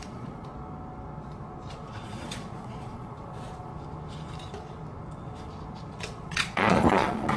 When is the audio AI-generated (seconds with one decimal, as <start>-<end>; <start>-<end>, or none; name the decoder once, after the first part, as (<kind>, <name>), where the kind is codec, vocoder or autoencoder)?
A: 0.0-0.5 (vocoder, Vocos); 1.7-3.7; 6.0-7.4